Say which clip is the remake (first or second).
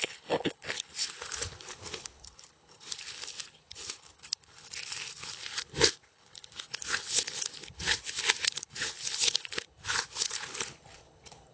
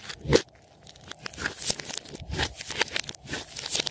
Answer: first